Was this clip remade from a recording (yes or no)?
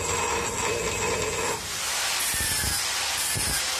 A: no